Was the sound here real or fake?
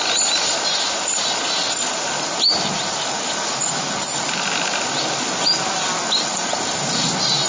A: real